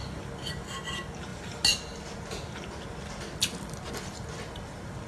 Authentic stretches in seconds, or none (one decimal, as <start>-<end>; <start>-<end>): 0.0-5.1

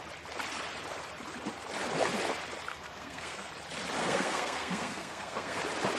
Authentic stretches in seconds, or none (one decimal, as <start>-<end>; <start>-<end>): 0.0-2.7; 3.5-4.0; 5.6-6.0

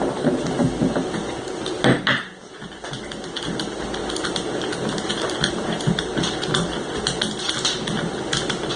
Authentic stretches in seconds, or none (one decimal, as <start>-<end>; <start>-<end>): 0.0-8.8

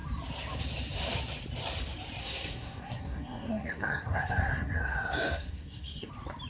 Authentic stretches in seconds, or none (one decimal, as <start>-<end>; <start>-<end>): 0.0-2.2; 6.1-6.5

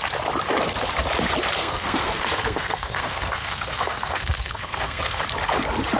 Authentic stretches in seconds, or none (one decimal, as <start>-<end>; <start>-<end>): 0.0-1.6; 5.2-6.0

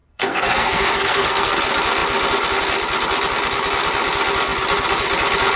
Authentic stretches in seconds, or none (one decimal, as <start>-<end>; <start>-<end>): 1.6-5.6

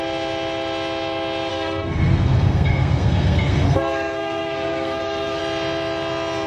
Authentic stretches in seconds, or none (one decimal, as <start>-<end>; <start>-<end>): 0.0-1.5; 5.4-6.5

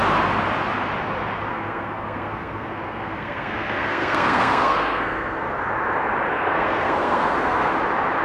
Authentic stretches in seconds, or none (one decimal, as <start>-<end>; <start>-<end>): 0.0-1.5; 5.6-6.3; 7.7-8.2